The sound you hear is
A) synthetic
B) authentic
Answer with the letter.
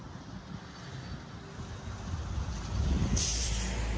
B